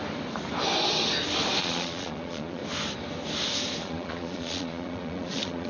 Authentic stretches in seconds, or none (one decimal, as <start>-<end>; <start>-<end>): 0.0-1.6; 2.6-3.8